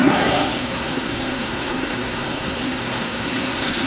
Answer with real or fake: fake